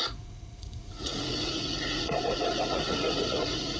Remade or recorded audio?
remade